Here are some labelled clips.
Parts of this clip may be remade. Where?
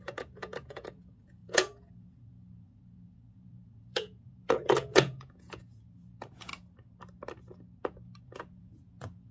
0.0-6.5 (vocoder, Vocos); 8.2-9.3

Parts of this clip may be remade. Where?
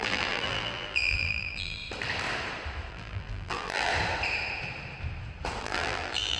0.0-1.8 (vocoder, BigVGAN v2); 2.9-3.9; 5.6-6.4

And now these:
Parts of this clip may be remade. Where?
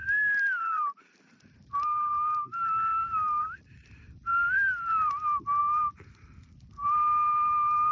0.0-3.9 (vocoder, BigVGAN v2); 4.3-5.1; 5.6-6.2; 6.8-7.9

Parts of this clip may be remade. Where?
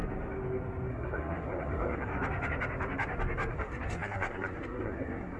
0.9-2.1 (codec, SNAC); 3.5-5.4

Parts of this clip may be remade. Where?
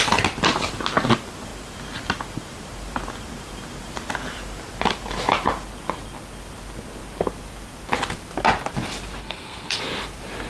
9.2-9.8 (codec, SNAC)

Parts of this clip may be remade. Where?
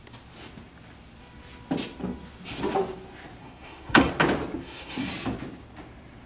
3.4-4.1 (codec, SNAC); 4.6-5.1